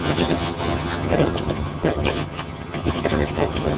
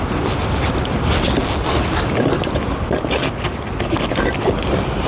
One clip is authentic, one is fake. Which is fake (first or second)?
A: first